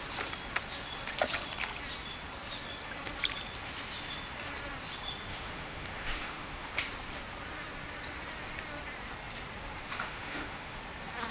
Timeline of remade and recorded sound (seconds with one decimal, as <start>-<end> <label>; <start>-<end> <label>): 0.0-5.3 recorded; 5.3-6.7 remade; 6.7-9.8 recorded; 9.8-10.8 remade; 10.8-11.3 recorded